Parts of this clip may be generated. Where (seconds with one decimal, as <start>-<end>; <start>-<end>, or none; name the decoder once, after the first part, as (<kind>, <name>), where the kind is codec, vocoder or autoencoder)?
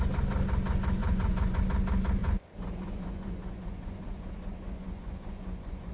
1.0-1.6 (vocoder, Vocos); 2.2-5.9